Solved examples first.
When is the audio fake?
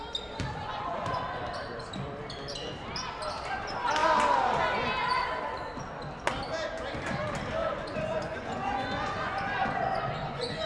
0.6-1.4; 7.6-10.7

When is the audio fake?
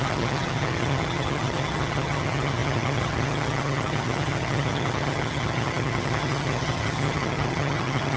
0.0-8.2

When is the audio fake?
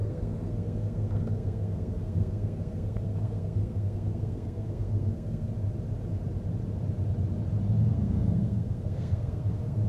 0.0-5.5; 7.8-9.9